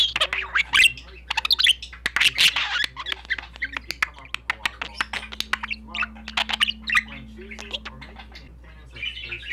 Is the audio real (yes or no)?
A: yes